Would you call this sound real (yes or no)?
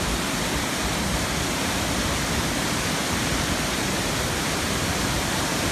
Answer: yes